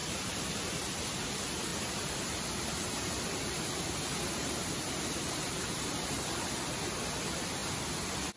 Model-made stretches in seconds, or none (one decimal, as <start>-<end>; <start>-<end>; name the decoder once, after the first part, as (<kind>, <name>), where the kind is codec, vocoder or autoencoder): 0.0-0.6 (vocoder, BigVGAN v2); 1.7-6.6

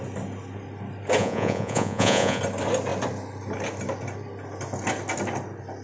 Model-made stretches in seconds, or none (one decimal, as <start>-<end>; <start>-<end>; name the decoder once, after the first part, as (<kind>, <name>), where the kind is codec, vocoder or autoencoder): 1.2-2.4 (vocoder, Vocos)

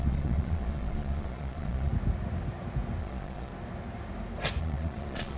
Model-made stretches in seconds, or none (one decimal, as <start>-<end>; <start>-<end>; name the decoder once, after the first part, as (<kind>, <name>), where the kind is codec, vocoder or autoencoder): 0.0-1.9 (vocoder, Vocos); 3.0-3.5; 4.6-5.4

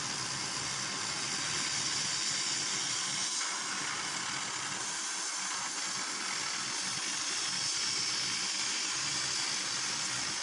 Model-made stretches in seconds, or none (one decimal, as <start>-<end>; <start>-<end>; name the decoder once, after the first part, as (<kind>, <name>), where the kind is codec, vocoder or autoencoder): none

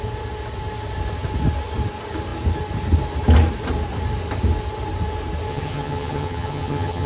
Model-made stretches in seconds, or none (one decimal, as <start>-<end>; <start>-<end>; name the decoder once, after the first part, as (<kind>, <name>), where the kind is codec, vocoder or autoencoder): 5.5-7.1 (vocoder, HiFi-GAN)

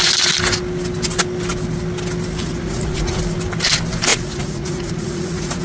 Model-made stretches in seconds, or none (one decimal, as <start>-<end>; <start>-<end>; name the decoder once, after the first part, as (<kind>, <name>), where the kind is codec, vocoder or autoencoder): 2.4-3.2 (vocoder, Vocos); 4.1-5.6

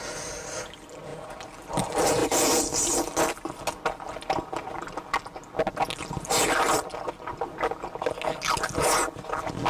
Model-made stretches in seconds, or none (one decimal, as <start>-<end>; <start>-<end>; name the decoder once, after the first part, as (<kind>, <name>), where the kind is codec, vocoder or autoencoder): none